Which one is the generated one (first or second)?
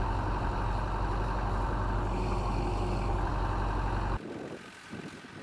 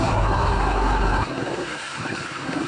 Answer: second